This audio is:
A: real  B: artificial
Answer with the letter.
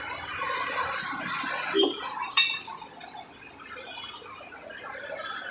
A